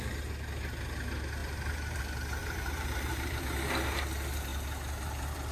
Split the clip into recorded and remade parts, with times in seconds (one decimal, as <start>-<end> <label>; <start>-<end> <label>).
0.0-1.4 recorded; 1.4-2.0 remade; 2.0-2.4 recorded; 2.4-3.4 remade; 3.4-4.5 recorded; 4.5-5.5 remade